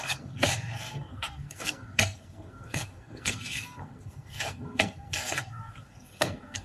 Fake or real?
fake